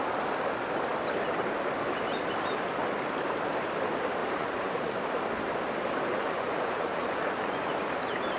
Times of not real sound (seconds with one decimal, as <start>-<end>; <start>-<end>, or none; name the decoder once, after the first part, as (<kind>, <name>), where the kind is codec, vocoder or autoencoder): 4.2-5.0 (vocoder, Vocos); 6.1-7.7